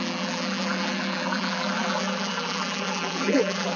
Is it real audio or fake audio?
fake